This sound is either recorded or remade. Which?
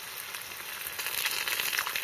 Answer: recorded